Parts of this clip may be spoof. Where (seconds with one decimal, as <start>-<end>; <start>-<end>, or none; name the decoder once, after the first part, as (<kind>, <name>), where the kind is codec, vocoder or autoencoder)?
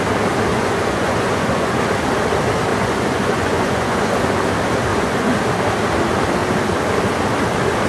0.5-1.8 (vocoder, Vocos); 2.7-4.1; 4.9-5.4